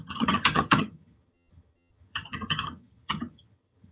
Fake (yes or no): yes